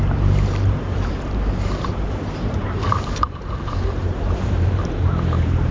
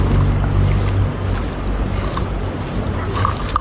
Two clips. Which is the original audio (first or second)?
second